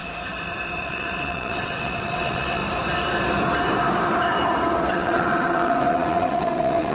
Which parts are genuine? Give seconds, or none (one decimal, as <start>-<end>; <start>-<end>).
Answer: 0.0-0.8; 2.6-4.9